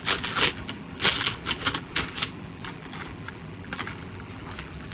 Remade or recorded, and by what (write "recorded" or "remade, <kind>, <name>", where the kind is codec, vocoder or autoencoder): remade, vocoder, BigVGAN v2